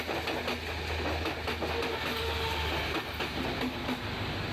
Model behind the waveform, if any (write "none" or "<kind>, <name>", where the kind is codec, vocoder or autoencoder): none